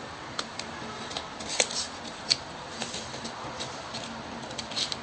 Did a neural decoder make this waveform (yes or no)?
no